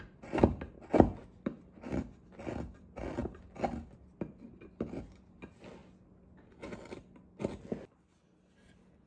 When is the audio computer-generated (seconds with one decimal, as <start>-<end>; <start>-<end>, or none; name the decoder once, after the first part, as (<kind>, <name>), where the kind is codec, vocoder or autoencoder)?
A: none